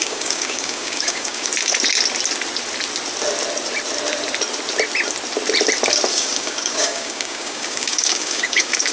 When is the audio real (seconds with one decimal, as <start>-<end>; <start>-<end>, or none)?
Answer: 1.5-6.1